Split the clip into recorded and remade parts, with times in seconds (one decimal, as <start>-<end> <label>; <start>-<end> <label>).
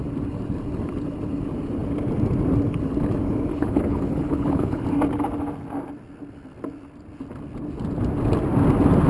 0.0-3.5 recorded; 3.5-4.8 remade; 4.8-9.1 recorded